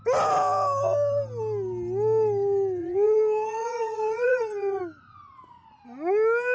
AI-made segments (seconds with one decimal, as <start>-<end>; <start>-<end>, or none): 2.8-4.8